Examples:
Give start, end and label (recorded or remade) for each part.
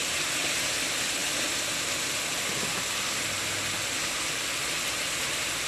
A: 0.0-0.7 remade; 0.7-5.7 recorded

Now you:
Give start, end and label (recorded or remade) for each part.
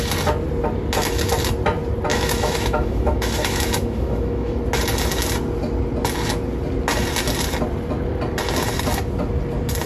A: 0.0-2.1 recorded; 2.1-4.6 remade; 4.6-9.9 recorded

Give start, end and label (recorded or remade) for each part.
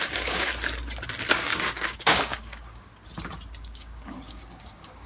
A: 0.0-0.5 remade; 0.5-1.3 recorded; 1.3-2.9 remade; 2.9-3.6 recorded; 3.6-5.1 remade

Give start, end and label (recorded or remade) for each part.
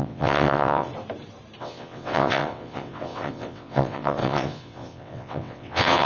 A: 0.0-0.9 remade; 0.9-1.6 recorded; 1.6-6.1 remade